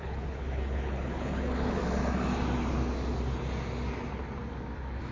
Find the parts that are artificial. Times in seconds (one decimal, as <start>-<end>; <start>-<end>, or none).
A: 0.0-1.8

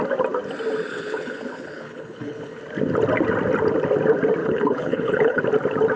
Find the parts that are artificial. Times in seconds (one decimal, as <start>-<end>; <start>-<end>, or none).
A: 0.9-2.6; 4.4-5.4

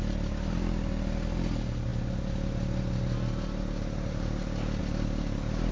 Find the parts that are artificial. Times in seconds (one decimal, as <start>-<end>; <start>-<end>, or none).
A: none

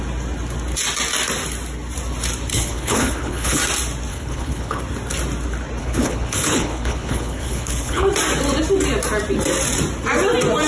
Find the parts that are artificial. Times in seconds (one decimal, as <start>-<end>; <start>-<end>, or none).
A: 2.5-3.6; 4.1-4.8; 5.8-8.1

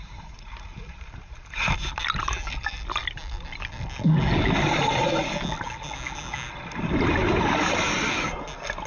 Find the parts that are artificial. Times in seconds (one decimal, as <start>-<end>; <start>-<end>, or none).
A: none

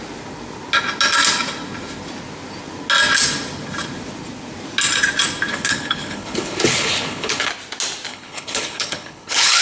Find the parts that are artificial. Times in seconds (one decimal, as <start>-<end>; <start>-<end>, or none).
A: 5.5-7.5; 8.1-9.6

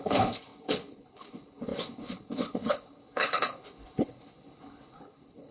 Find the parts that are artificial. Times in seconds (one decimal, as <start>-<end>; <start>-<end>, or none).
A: 0.0-5.5